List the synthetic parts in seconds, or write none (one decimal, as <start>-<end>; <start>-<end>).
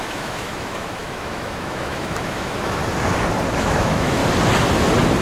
0.0-2.8; 3.6-4.2